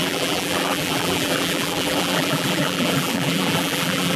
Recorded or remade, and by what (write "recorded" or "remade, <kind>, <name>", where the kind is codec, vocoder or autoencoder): remade, vocoder, BigVGAN v2